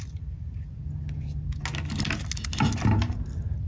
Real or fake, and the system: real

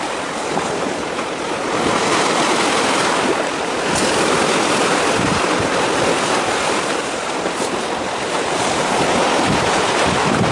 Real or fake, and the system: fake, vocoder, BigVGAN v2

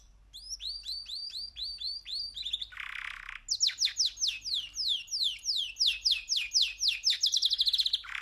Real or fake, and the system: real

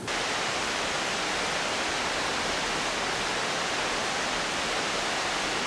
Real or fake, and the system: real